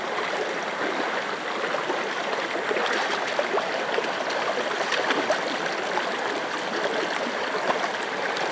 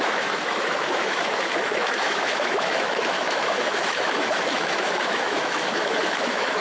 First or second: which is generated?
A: second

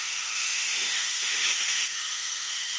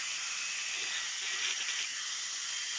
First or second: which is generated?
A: first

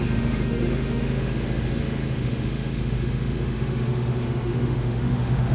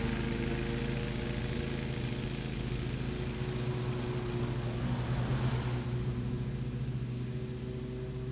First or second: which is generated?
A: first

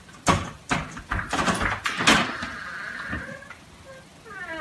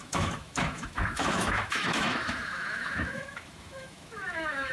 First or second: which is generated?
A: second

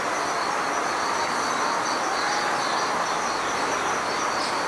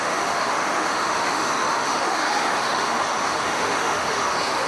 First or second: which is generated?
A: second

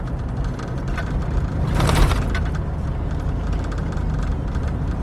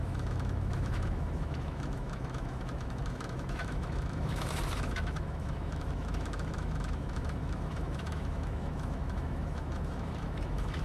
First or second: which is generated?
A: second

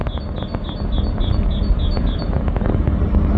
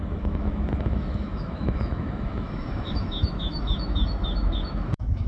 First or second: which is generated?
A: second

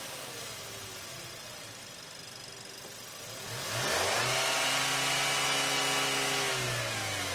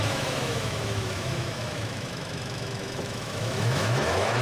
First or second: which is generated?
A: second